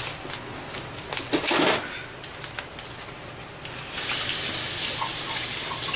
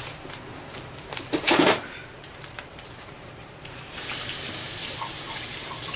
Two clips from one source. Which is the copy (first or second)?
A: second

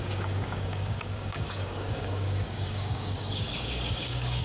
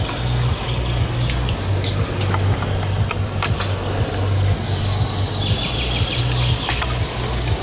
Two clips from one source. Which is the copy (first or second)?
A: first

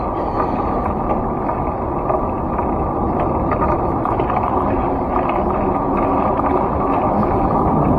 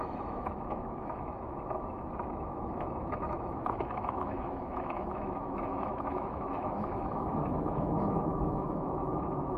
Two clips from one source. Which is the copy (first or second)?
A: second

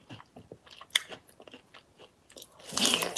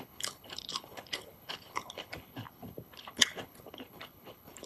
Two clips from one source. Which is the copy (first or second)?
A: second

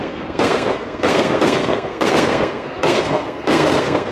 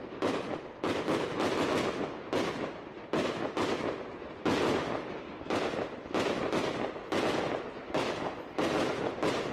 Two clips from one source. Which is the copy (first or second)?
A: first